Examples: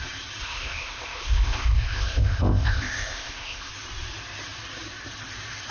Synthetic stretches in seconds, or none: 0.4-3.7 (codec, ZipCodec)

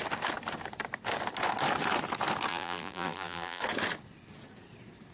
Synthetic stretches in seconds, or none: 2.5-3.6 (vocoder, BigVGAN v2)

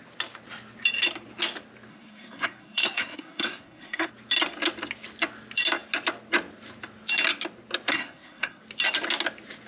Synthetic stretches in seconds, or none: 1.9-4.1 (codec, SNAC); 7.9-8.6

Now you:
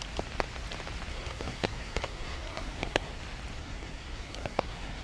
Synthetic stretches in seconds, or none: 1.1-3.2 (codec, SNAC); 3.6-5.0

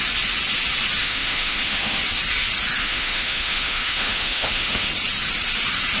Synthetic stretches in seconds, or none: 1.0-2.0 (autoencoder, DAC-VAE); 2.8-4.9